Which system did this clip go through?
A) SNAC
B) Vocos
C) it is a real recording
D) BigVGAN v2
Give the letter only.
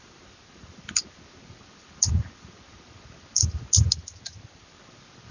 C